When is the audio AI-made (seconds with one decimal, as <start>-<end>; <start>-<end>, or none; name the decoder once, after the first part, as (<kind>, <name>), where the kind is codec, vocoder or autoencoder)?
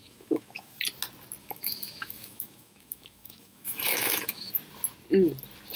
0.0-0.8 (autoencoder, DAC-VAE); 1.4-4.5